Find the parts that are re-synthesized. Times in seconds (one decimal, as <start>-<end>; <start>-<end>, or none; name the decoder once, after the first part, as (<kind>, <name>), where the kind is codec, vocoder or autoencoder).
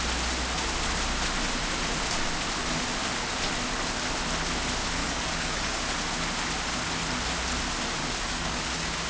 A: 5.0-5.8 (codec, DAC); 8.0-8.6